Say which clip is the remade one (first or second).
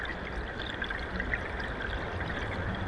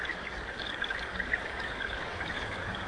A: second